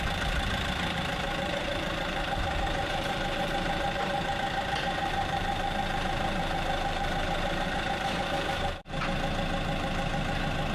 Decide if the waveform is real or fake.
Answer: fake